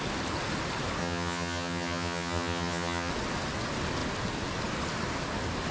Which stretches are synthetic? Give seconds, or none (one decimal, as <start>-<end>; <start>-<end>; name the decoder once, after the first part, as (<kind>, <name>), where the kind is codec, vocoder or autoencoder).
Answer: 1.0-3.1 (vocoder, HiFi-GAN)